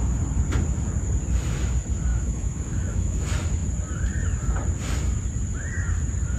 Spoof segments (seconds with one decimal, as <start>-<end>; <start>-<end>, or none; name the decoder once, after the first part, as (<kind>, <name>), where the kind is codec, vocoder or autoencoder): 2.1-3.2 (autoencoder, DAC-VAE)